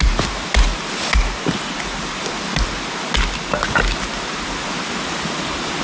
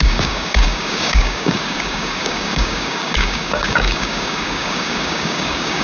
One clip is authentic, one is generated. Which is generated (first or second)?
second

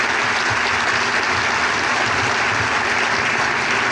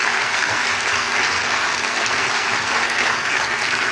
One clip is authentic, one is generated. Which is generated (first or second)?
second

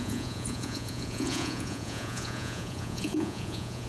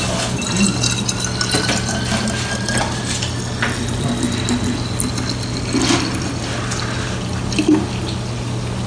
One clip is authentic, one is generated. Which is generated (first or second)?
first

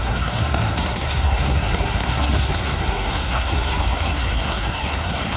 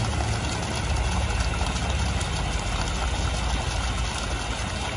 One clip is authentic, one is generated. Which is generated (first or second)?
first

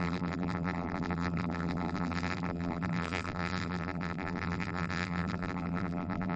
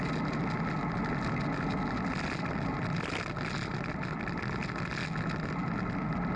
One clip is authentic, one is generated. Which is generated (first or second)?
first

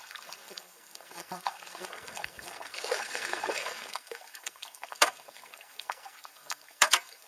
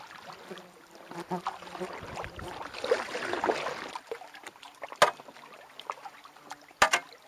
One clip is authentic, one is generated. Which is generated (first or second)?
first